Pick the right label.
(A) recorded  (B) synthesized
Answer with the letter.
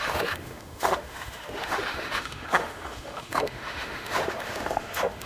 B